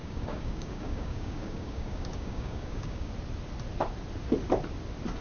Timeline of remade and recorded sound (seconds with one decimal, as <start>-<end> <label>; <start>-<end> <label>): 0.0-3.1 remade; 3.1-5.2 recorded